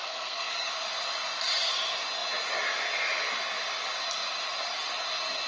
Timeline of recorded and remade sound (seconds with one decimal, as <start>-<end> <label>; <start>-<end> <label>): 0.0-0.7 remade; 0.7-5.5 recorded